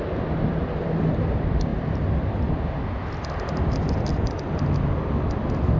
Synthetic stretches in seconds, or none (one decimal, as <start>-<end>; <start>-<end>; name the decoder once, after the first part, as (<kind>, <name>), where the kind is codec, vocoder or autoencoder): none